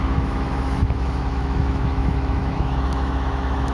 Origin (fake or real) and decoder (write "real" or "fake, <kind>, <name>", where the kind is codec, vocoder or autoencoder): fake, autoencoder, DAC-VAE